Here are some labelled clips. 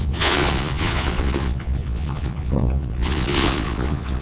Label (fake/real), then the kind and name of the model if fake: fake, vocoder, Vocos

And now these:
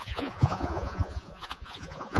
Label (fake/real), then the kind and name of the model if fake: fake, vocoder, Vocos